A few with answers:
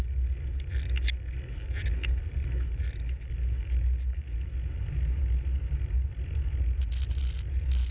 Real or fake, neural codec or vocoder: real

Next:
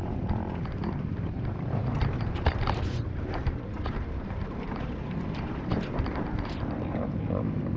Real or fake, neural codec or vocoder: fake, vocoder, BigVGAN v2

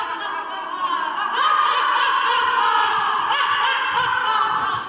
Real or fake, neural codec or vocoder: real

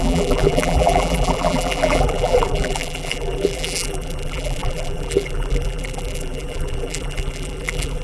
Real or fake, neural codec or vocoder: fake, vocoder, BigVGAN v2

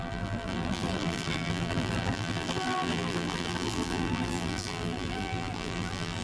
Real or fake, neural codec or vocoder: fake, vocoder, BigVGAN v2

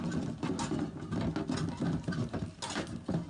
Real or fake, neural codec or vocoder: real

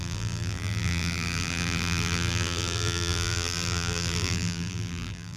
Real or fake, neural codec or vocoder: fake, vocoder, BigVGAN v2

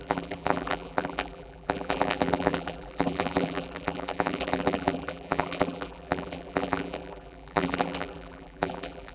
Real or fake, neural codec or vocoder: fake, vocoder, BigVGAN v2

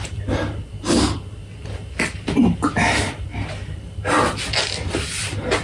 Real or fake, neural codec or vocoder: fake, vocoder, BigVGAN v2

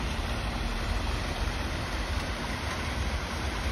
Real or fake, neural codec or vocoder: fake, vocoder, BigVGAN v2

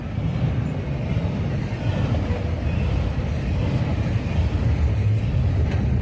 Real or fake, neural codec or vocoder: real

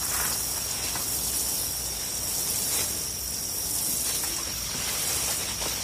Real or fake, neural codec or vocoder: real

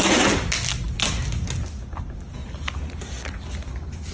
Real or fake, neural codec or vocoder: real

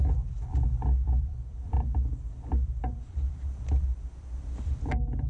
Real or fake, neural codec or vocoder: fake, vocoder, BigVGAN v2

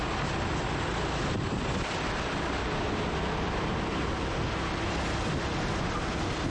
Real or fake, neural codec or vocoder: real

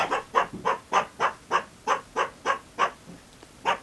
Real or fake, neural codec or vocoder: real